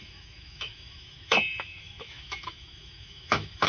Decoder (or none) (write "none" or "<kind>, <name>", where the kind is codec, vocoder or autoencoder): autoencoder, DAC-VAE